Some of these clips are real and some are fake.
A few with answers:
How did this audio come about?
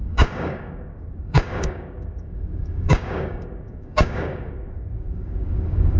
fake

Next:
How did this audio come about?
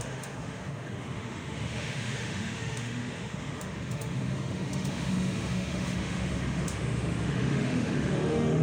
fake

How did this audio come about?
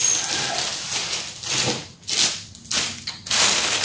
real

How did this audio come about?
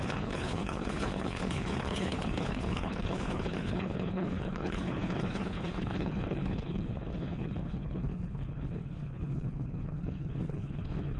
fake